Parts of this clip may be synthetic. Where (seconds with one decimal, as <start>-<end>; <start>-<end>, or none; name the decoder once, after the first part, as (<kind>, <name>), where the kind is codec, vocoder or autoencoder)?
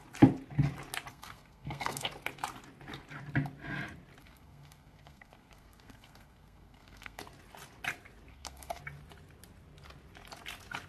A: 1.1-2.1 (codec, SNAC); 4.2-7.2; 8.3-8.8